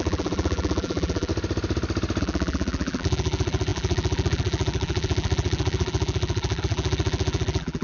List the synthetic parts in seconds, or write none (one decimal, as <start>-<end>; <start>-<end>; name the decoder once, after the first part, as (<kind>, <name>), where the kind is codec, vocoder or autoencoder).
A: 0.0-1.3 (vocoder, BigVGAN v2); 2.2-7.8